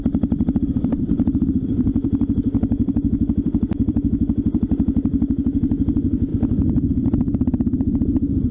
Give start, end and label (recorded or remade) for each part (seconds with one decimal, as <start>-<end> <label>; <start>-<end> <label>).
0.0-0.9 recorded; 0.9-5.4 remade; 5.4-8.5 recorded